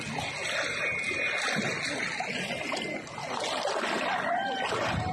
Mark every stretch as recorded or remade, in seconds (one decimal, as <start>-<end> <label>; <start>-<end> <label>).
0.0-5.1 recorded